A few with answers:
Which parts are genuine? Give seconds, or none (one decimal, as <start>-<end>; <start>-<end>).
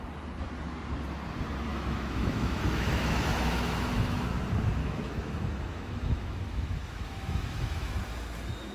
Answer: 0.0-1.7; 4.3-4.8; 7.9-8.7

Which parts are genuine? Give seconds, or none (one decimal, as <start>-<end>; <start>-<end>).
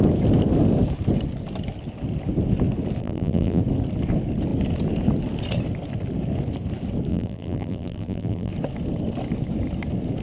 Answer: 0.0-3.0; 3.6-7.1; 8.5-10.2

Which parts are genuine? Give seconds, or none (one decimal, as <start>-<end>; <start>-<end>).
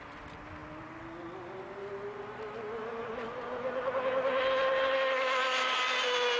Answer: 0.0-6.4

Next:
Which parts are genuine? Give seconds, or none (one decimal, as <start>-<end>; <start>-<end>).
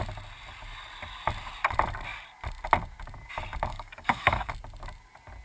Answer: 0.0-3.7; 4.5-5.4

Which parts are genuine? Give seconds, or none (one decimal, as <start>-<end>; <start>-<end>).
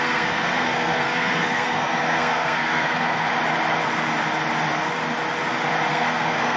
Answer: 3.3-5.9